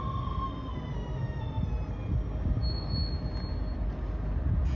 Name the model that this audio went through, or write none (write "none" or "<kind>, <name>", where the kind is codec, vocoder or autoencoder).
none